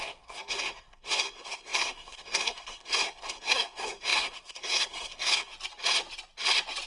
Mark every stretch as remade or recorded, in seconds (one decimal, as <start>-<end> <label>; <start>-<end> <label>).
0.0-5.5 remade; 5.5-6.9 recorded